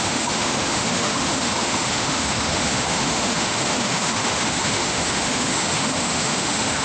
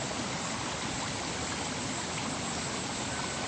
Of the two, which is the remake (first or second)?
first